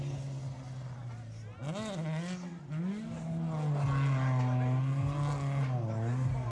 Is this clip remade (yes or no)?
no